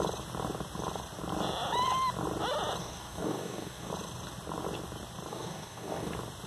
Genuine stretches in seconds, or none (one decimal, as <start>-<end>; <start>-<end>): 0.0-2.8; 3.9-5.3; 6.1-6.5